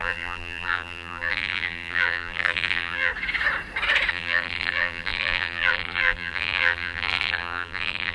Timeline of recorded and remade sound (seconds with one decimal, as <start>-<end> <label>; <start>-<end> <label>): 0.0-3.1 remade; 3.1-4.1 recorded; 4.1-8.1 remade